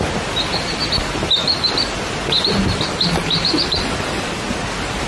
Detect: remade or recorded recorded